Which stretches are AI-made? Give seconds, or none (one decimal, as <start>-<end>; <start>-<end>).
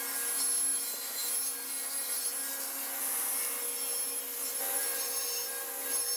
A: none